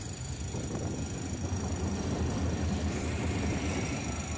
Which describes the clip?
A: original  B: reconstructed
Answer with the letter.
B